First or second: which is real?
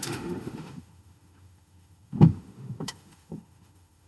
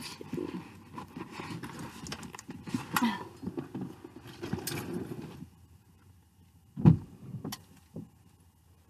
second